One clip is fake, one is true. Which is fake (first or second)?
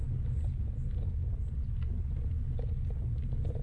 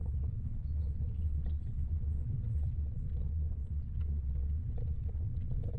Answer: second